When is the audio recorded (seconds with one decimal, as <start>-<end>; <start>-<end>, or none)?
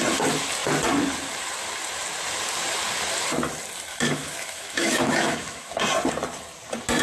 0.0-3.9; 5.8-7.0